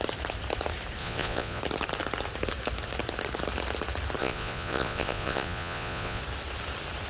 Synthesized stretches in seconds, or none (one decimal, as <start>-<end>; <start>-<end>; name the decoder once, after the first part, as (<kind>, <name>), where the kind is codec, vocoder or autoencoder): 1.0-1.6 (vocoder, Vocos); 4.2-6.2